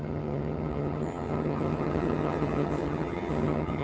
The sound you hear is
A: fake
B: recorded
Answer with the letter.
A